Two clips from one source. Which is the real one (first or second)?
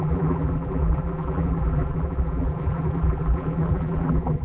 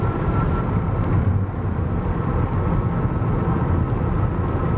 second